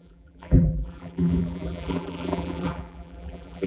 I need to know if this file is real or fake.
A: fake